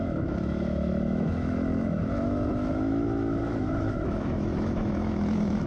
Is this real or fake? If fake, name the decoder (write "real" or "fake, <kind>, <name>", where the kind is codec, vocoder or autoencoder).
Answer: fake, autoencoder, DAC-VAE